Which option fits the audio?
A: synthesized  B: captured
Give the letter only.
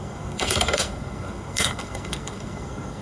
A